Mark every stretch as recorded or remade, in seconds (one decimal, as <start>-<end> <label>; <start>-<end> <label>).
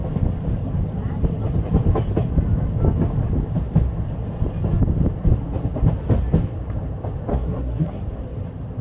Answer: 0.0-7.3 recorded; 7.3-8.0 remade; 8.0-8.8 recorded